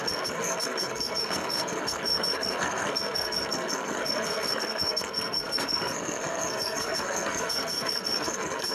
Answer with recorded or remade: remade